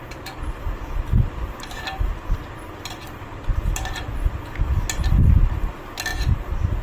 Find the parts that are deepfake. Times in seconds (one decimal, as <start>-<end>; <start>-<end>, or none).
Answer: none